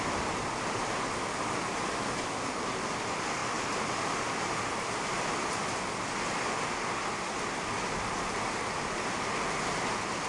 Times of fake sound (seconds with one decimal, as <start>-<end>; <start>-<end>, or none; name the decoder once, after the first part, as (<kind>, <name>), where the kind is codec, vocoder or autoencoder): none